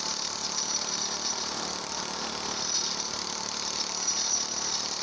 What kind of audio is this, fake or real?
real